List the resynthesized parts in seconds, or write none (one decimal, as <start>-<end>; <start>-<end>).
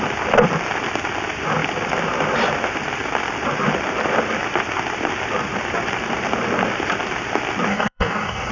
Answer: 7.7-8.5